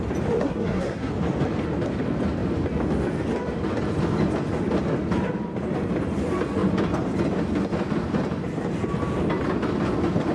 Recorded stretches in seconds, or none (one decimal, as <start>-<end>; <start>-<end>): 0.0-0.4; 1.1-10.3